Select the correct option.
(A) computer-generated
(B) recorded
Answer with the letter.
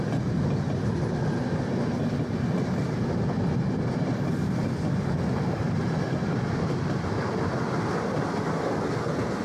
B